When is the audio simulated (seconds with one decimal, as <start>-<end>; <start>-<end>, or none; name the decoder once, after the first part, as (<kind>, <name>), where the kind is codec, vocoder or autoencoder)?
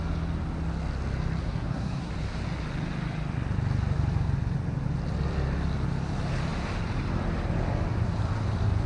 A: 1.4-2.1 (codec, SNAC)